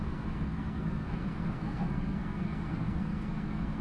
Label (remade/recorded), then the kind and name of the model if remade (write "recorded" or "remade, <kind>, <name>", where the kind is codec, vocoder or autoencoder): remade, codec, SNAC